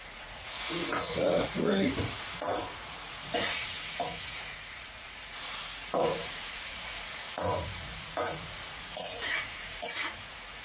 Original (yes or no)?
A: no